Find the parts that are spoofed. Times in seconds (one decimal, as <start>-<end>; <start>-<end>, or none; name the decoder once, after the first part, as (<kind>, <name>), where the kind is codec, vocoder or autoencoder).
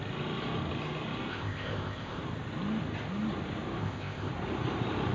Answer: 1.3-2.2 (codec, ZipCodec); 3.8-4.3